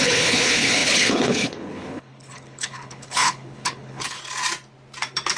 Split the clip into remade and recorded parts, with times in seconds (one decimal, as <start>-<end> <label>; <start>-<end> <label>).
0.0-4.2 remade; 4.2-5.4 recorded